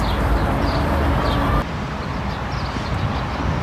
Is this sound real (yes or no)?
yes